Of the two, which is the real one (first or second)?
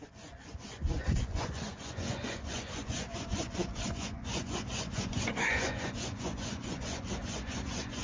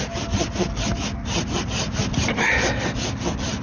second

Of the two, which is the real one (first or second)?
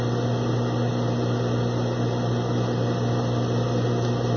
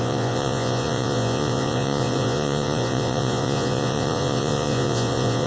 first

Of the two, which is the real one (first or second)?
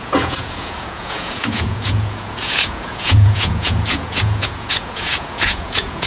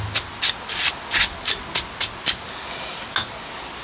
second